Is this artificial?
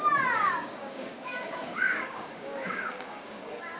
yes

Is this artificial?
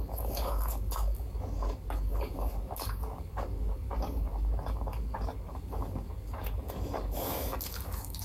yes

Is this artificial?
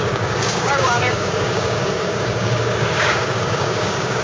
yes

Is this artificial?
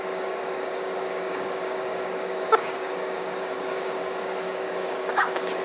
yes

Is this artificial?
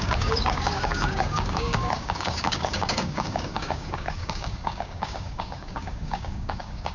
yes